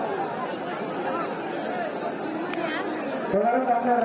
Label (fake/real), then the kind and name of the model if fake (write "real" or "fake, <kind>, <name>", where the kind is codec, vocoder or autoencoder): real